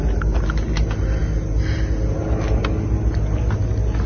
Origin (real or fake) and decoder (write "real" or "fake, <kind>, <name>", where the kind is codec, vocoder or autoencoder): real